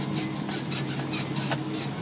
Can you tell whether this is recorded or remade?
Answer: recorded